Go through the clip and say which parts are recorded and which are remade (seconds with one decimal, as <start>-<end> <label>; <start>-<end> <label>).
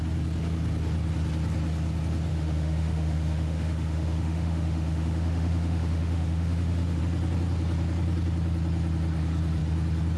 0.0-2.3 recorded; 2.3-7.0 remade; 7.0-10.2 recorded